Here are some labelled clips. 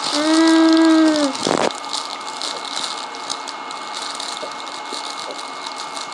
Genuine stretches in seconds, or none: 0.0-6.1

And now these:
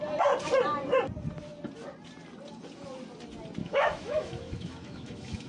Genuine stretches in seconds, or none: 0.0-3.6

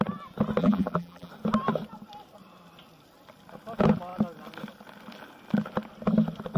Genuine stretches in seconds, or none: 0.0-0.6; 1.3-6.6